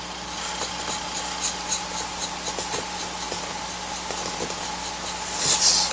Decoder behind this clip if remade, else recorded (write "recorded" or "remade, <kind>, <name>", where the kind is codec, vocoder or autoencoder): recorded